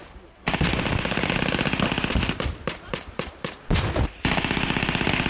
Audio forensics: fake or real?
real